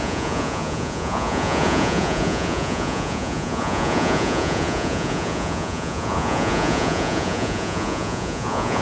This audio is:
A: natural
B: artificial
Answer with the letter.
B